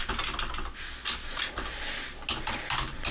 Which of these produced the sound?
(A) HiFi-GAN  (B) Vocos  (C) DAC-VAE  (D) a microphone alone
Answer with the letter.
D